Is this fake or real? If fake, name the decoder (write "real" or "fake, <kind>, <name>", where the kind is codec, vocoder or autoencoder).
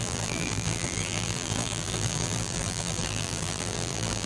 fake, vocoder, BigVGAN v2